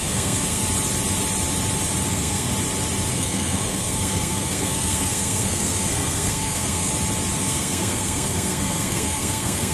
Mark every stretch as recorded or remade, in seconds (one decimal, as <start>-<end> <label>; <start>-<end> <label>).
0.0-0.6 remade; 0.6-2.1 recorded; 2.1-2.5 remade; 2.5-3.1 recorded; 3.1-6.9 remade; 6.9-7.4 recorded; 7.4-9.7 remade

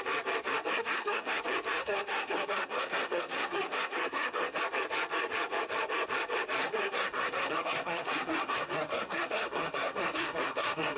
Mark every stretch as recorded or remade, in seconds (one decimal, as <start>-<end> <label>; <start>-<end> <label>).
0.0-0.7 recorded; 0.7-1.4 remade; 1.4-1.8 recorded; 1.8-4.6 remade; 4.6-6.6 recorded; 6.6-11.0 remade

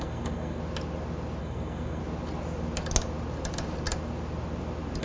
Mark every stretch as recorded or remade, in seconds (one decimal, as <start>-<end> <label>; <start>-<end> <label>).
0.0-0.6 remade; 0.6-1.4 recorded; 1.4-2.0 remade; 2.0-5.0 recorded

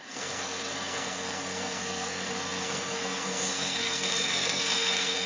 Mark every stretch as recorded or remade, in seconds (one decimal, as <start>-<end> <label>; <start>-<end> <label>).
0.0-5.3 remade

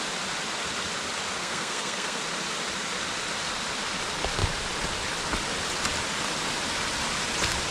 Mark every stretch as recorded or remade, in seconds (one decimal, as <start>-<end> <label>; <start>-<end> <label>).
0.0-1.4 recorded; 1.4-2.2 remade; 2.2-7.7 recorded

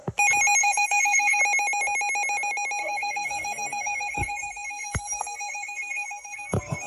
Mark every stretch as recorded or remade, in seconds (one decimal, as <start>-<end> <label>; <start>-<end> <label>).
0.0-0.6 recorded; 0.6-1.4 remade; 1.4-2.8 recorded; 2.8-6.9 remade

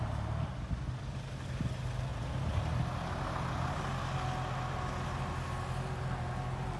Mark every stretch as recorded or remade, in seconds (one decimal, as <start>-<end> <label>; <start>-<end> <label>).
0.0-6.8 recorded

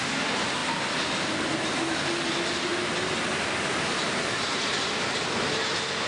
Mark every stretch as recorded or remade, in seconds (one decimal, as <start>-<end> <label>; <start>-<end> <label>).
0.0-6.1 recorded